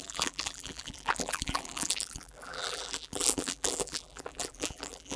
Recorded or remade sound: remade